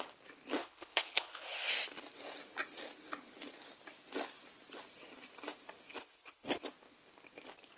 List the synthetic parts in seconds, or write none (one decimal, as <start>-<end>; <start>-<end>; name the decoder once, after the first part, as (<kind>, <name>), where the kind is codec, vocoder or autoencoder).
0.6-1.7 (codec, HILCodec); 6.0-6.6

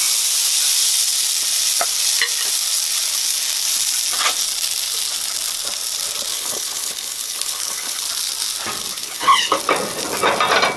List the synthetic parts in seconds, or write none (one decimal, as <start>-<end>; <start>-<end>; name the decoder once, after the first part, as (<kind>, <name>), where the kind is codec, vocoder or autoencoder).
6.3-8.0 (codec, HILCodec); 9.0-9.6

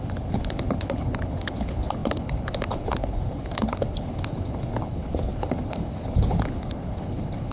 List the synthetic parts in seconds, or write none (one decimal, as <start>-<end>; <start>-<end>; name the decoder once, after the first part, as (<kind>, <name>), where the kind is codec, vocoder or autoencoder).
0.0-7.5 (codec, HILCodec)

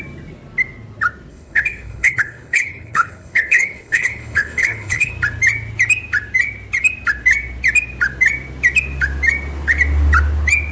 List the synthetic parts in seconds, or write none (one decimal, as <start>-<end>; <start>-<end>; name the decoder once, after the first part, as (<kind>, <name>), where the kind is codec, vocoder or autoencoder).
1.3-5.1 (codec, HILCodec)

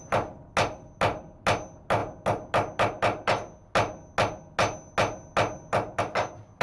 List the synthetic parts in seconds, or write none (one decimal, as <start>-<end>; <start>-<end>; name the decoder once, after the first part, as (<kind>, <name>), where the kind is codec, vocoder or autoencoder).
none

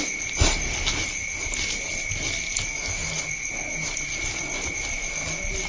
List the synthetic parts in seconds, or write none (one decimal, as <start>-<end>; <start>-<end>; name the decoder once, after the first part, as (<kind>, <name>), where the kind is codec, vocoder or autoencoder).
none